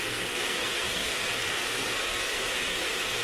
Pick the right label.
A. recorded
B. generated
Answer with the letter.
B